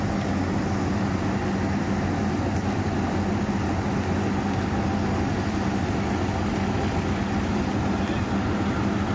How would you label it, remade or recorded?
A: recorded